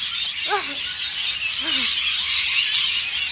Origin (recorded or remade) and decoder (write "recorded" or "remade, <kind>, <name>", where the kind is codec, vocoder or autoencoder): recorded